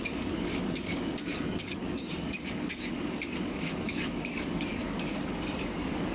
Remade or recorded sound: remade